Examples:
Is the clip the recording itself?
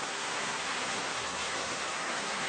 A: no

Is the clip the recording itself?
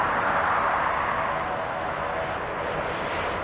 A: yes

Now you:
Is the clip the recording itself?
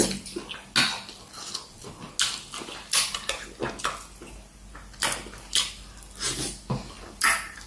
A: yes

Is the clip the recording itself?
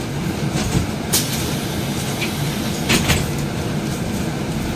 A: yes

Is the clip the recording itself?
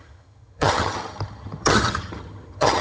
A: no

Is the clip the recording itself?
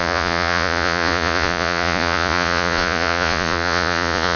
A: no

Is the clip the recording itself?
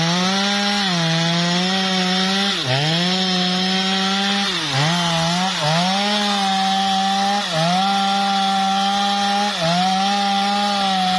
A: yes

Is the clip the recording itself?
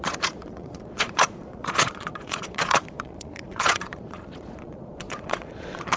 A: no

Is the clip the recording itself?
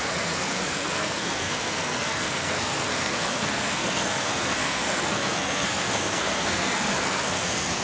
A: no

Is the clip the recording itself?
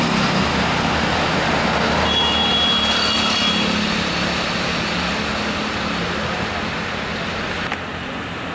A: yes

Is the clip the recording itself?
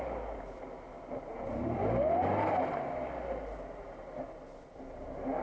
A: yes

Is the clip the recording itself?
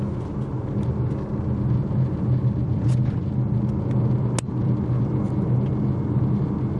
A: yes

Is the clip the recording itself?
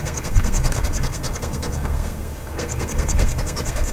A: no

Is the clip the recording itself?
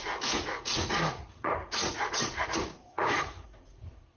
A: no